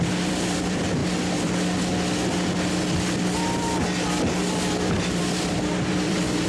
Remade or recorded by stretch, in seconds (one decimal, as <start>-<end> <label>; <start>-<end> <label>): 0.0-1.0 remade; 1.0-4.9 recorded; 4.9-6.5 remade